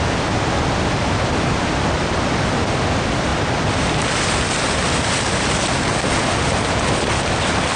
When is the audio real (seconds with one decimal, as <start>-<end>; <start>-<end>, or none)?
0.0-7.8